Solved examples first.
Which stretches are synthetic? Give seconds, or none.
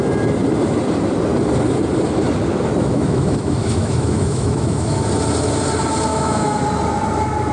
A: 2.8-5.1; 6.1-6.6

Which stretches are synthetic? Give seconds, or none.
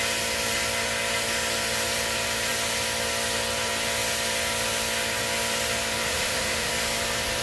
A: 6.1-6.7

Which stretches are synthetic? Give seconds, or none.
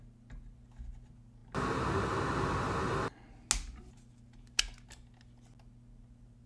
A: none